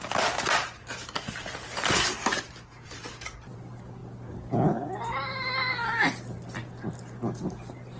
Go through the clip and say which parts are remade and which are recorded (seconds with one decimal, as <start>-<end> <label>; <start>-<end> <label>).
0.0-4.0 remade; 4.0-7.5 recorded; 7.5-8.0 remade